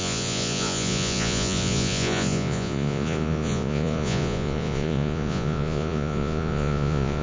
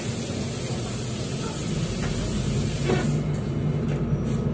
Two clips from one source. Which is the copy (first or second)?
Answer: first